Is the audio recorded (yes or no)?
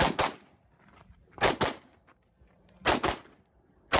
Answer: yes